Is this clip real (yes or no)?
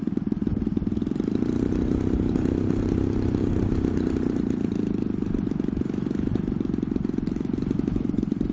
no